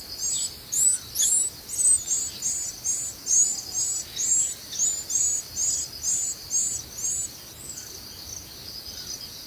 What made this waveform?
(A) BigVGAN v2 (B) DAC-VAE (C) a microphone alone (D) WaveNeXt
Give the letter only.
C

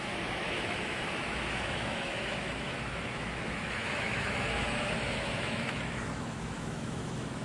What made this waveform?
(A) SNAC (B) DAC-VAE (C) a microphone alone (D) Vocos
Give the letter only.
B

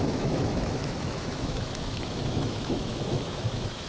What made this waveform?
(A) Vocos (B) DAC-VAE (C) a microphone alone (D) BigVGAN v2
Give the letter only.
B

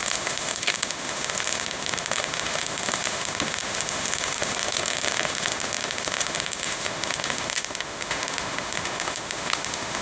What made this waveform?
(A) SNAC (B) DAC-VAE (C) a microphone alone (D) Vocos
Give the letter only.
B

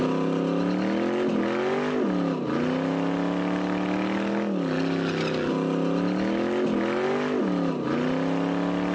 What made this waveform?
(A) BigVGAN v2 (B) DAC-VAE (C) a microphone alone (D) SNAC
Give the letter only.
C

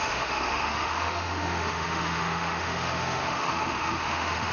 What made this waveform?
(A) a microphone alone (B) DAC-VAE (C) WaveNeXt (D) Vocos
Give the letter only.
B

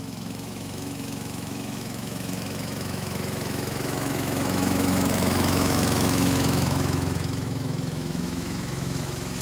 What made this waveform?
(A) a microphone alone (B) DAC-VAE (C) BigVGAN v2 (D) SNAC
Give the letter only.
B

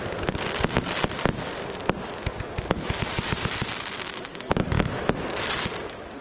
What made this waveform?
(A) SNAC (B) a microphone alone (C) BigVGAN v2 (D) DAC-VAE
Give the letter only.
B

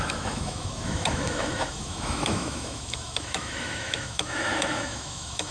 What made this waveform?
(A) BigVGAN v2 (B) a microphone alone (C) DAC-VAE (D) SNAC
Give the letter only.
C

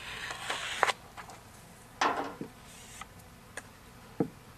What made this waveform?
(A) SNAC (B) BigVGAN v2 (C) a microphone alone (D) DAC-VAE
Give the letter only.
C